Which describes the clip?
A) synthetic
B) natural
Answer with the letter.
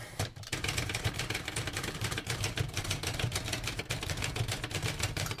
A